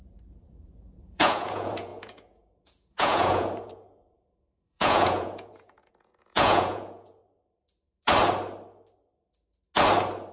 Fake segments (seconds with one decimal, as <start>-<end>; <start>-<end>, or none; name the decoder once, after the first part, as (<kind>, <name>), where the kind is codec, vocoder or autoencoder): 0.0-7.2 (vocoder, Vocos)